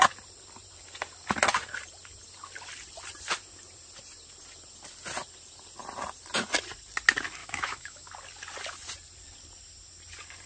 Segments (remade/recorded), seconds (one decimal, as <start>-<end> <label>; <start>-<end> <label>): 0.0-7.4 recorded; 7.4-8.1 remade; 8.1-10.5 recorded